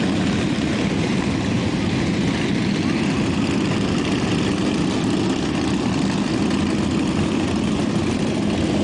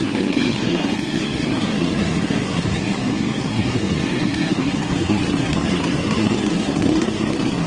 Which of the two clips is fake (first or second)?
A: second